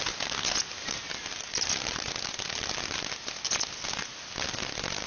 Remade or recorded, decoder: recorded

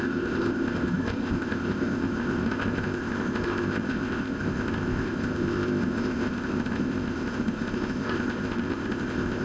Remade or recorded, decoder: remade, codec, ZipCodec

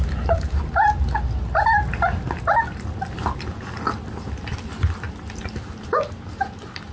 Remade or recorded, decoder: recorded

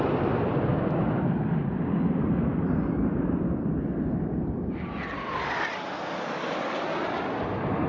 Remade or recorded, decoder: recorded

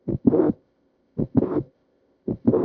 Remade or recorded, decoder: remade, codec, ZipCodec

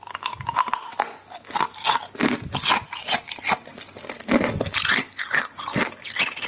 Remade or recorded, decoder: recorded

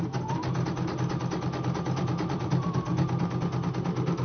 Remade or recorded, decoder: recorded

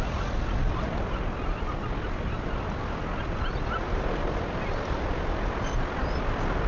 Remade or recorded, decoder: recorded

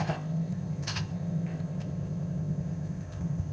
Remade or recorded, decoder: remade, codec, ZipCodec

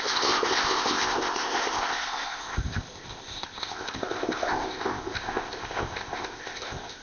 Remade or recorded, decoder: remade, codec, ZipCodec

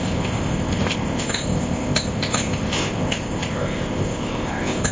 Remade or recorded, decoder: remade, codec, ZipCodec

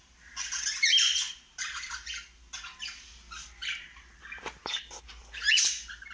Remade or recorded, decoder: recorded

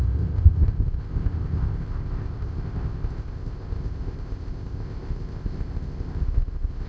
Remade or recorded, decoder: remade, codec, ZipCodec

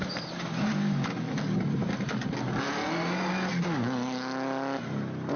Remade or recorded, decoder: recorded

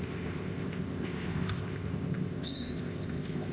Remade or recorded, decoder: remade, codec, ZipCodec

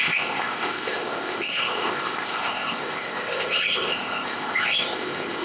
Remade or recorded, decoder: remade, codec, ZipCodec